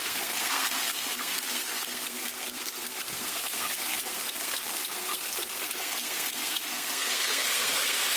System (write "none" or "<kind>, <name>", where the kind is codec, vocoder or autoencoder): codec, SNAC